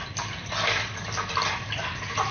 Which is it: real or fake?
real